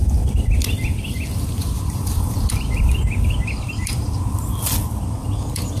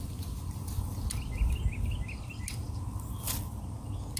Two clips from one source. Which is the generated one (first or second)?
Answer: first